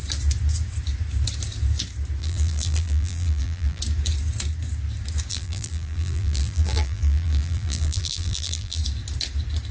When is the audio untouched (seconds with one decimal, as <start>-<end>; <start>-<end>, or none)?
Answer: 0.0-2.2; 3.8-5.3; 8.8-9.7